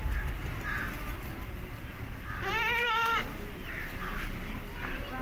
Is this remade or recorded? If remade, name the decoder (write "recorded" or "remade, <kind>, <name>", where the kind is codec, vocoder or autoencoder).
recorded